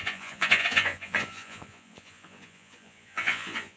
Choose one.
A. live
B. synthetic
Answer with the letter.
B